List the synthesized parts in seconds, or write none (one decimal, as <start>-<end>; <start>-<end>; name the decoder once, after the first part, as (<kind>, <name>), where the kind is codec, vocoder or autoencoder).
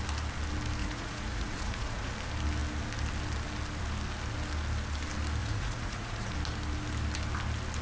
0.8-2.1 (vocoder, Vocos); 5.4-6.3